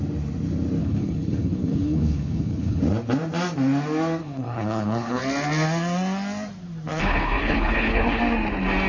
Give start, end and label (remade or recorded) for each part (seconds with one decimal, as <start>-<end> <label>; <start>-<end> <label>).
0.0-0.8 recorded; 0.8-2.8 remade; 2.8-4.2 recorded; 4.2-5.2 remade; 5.2-7.0 recorded; 7.0-8.2 remade; 8.2-8.9 recorded